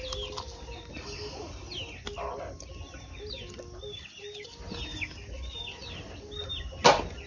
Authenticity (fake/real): real